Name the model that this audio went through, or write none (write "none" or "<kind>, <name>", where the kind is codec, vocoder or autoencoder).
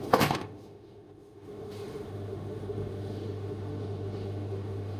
autoencoder, DAC-VAE